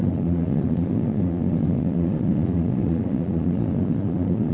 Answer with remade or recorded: remade